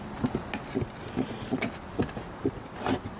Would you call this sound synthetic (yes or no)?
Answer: no